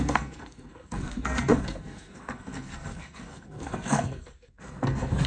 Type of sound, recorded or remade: remade